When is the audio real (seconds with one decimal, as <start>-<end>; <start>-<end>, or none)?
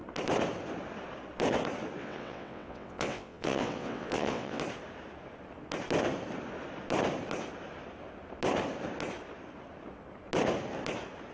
0.0-2.0; 4.6-11.3